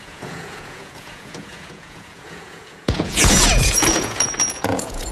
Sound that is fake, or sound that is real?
fake